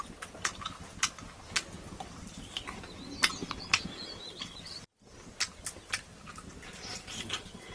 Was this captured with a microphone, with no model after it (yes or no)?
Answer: yes